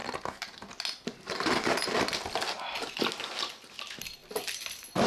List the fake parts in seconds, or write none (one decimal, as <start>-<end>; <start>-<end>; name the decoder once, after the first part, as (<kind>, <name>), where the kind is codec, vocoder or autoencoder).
none